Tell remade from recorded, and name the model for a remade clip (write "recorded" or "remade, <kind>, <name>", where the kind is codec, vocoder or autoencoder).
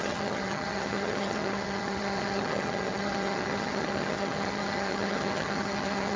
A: remade, vocoder, HiFi-GAN